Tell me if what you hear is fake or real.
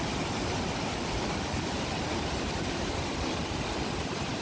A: real